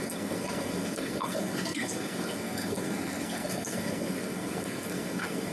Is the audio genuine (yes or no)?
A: no